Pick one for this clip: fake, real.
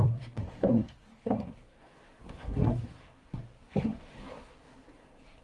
fake